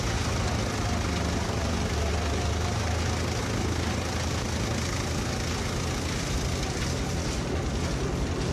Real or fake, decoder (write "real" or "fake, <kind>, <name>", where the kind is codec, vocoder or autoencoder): real